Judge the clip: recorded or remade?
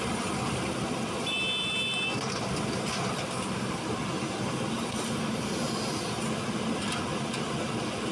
recorded